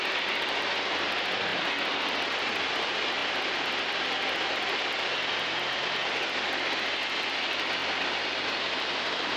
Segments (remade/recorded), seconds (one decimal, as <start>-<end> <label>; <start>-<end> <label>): 0.0-9.4 recorded